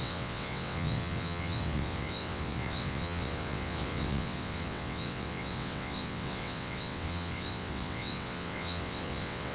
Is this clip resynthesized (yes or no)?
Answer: yes